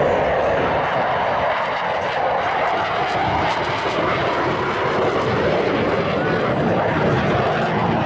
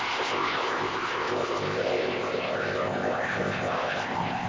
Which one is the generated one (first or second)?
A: second